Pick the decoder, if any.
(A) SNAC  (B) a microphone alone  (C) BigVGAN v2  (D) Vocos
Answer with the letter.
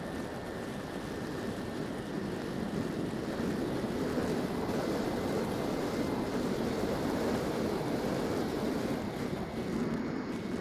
C